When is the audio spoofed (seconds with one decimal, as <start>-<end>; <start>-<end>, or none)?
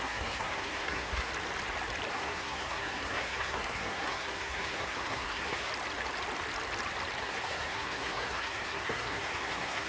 0.0-1.3; 2.1-5.7; 7.2-9.9